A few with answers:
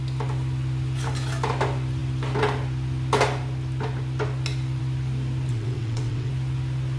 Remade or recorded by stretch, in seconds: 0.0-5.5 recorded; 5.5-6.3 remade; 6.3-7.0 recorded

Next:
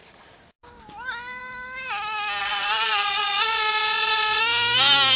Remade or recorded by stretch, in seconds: 0.0-2.4 recorded; 2.4-4.4 remade; 4.4-5.2 recorded

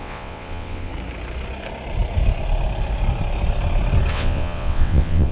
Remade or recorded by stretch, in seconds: 0.0-0.9 remade; 0.9-4.1 recorded; 4.1-5.3 remade

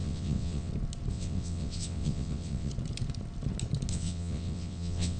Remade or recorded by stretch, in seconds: 0.0-0.7 remade; 0.7-1.1 recorded; 1.1-2.7 remade; 2.7-3.9 recorded; 3.9-5.2 remade

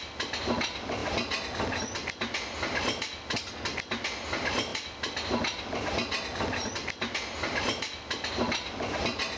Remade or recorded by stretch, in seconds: 0.0-9.4 recorded

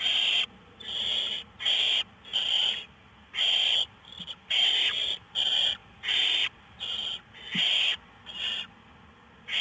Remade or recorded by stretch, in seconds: 0.0-9.6 recorded

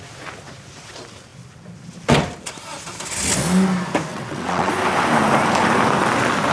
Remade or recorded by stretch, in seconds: 0.0-4.1 recorded; 4.1-4.7 remade; 4.7-6.5 recorded